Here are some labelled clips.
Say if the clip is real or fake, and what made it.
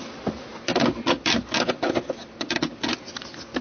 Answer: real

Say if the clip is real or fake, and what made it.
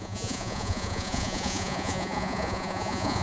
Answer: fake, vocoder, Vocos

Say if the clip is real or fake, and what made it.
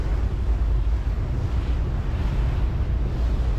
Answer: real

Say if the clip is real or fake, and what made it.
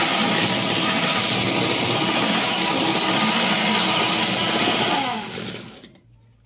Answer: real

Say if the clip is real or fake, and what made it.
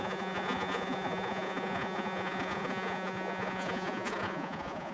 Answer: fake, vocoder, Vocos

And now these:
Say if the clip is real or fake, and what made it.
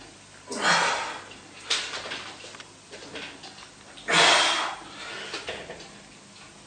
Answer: real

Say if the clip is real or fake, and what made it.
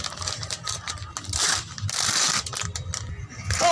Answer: real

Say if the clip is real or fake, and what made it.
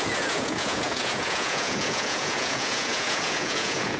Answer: fake, vocoder, Vocos